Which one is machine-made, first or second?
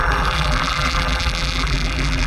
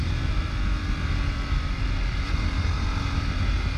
first